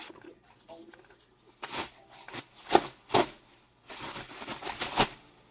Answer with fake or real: real